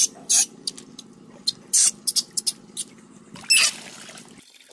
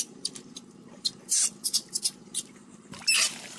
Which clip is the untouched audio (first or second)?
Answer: first